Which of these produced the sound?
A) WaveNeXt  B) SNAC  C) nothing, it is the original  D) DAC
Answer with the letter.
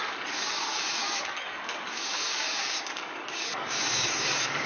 D